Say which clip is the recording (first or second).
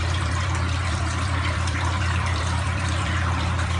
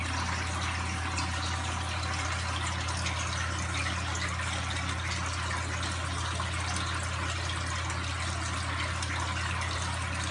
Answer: second